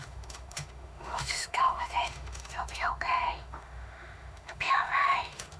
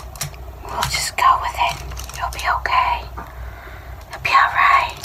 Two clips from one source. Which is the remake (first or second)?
first